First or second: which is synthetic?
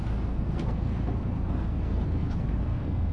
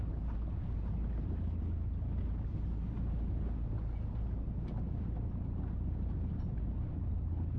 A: first